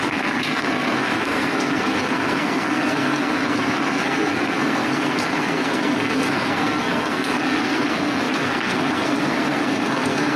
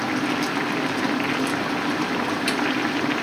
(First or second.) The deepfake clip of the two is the first